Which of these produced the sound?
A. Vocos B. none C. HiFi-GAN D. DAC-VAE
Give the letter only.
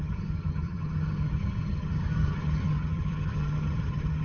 C